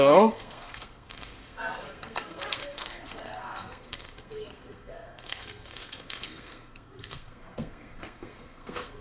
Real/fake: fake